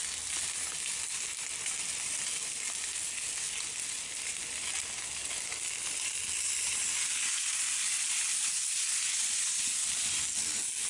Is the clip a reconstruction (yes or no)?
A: no